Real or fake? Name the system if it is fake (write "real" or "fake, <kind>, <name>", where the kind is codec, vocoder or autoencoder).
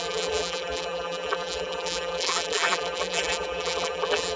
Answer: fake, vocoder, BigVGAN v2